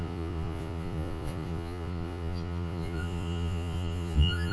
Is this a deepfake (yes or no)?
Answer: yes